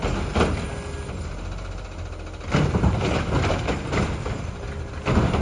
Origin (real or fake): real